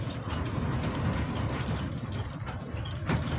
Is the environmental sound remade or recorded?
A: recorded